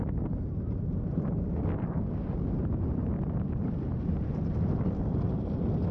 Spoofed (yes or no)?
no